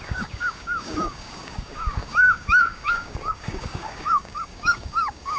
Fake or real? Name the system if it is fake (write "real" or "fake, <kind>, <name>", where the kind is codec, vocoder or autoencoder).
fake, codec, DAC